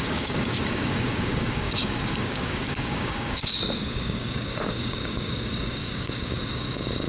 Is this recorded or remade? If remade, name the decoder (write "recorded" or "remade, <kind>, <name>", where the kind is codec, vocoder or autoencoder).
remade, codec, DAC